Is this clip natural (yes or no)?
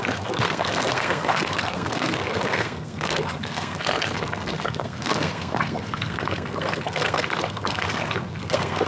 no